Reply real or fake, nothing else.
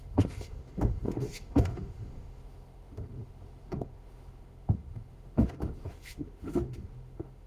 fake